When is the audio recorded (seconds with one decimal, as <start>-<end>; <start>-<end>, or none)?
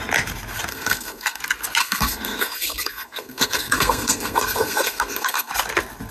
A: 0.0-0.7; 1.4-1.8; 5.5-6.1